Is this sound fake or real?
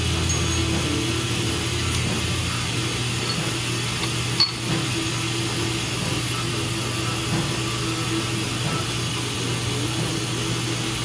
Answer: real